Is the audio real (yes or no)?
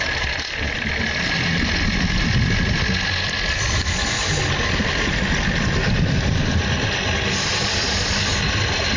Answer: yes